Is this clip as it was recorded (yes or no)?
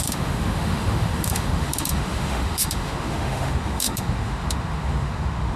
no